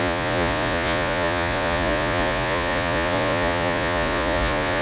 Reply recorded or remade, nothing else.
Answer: remade